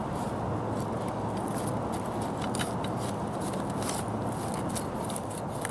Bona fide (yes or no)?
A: yes